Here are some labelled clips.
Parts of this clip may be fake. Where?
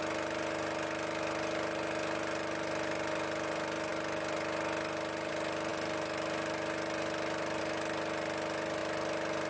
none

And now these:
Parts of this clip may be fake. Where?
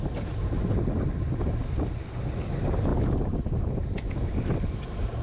none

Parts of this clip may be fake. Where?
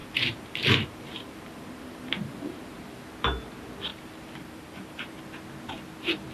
0.0-3.1 (vocoder, BigVGAN v2); 3.9-5.1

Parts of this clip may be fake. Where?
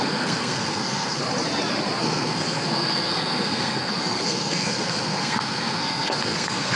0.0-1.2 (codec, SNAC); 2.0-6.8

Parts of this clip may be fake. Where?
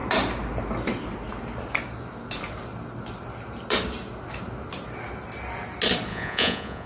6.1-6.9 (vocoder, Vocos)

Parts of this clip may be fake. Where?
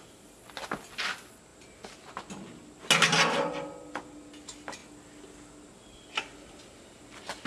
none